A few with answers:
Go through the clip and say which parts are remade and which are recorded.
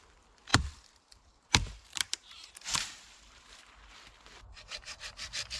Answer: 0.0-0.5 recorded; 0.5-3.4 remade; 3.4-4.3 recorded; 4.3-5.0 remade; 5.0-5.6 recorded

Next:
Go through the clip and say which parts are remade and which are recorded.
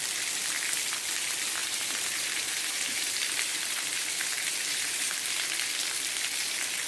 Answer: 0.0-1.6 recorded; 1.6-5.1 remade; 5.1-6.9 recorded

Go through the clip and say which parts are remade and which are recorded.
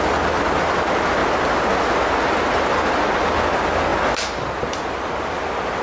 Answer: 0.0-5.8 recorded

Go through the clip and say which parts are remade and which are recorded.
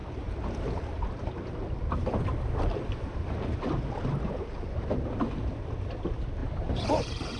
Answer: 0.0-6.4 recorded; 6.4-7.0 remade; 7.0-7.4 recorded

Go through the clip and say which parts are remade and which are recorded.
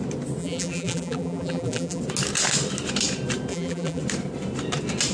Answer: 0.0-0.4 recorded; 0.4-2.0 remade; 2.0-3.5 recorded; 3.5-4.0 remade; 4.0-5.1 recorded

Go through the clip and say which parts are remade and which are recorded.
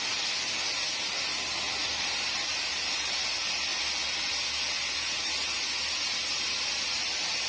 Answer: 0.0-1.8 recorded; 1.8-3.2 remade; 3.2-3.7 recorded; 3.7-4.3 remade; 4.3-4.8 recorded; 4.8-6.7 remade; 6.7-7.5 recorded